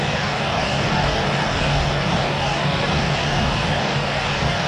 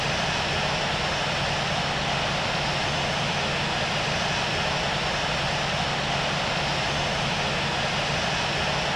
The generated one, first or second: first